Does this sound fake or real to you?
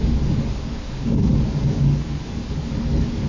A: fake